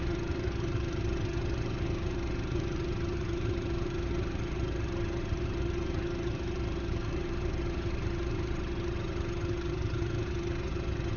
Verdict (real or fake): fake